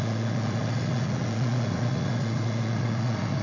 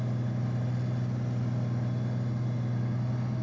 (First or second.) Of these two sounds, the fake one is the first